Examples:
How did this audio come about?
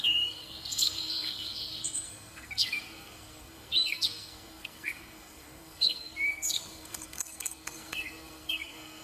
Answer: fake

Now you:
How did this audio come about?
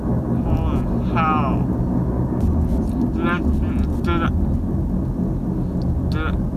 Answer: real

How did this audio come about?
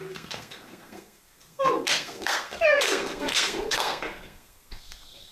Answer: fake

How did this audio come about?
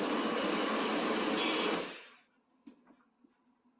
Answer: real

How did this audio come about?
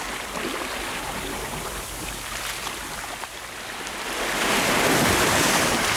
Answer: real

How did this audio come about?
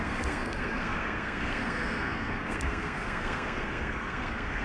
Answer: fake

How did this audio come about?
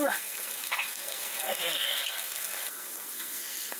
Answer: fake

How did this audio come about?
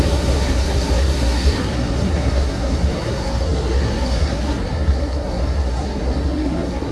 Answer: fake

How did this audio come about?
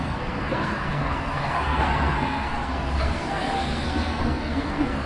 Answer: fake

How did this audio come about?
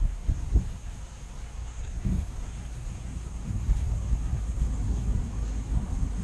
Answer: fake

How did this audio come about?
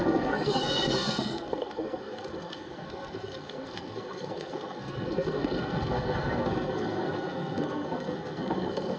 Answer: fake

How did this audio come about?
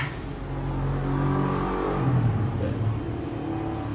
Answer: real